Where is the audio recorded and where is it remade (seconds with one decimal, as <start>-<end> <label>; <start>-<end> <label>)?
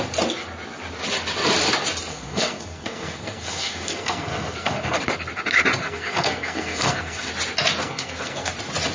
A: 0.0-2.1 recorded; 2.1-5.0 remade; 5.0-5.8 recorded; 5.8-7.3 remade; 7.3-7.8 recorded; 7.8-8.5 remade; 8.5-8.9 recorded